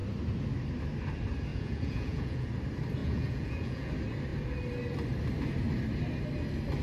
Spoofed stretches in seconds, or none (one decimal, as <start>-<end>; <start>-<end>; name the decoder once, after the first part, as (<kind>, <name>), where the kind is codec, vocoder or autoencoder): 1.5-2.5 (vocoder, Vocos); 3.0-3.9